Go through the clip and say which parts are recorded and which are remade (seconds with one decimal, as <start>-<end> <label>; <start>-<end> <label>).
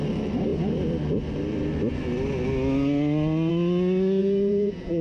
0.0-4.2 recorded; 4.2-5.0 remade